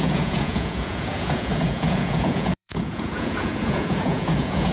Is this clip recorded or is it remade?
remade